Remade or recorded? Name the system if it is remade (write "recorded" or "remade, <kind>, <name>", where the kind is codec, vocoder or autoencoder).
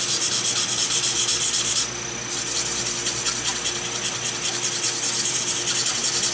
recorded